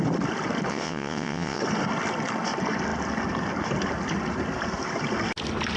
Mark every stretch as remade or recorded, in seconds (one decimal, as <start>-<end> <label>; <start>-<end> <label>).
0.0-0.7 recorded; 0.7-1.6 remade; 1.6-5.8 recorded